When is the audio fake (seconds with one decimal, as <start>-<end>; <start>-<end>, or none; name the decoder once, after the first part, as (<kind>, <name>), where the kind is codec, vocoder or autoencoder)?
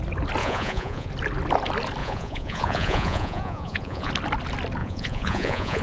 0.4-1.1 (vocoder, Vocos); 2.0-4.1; 4.8-5.8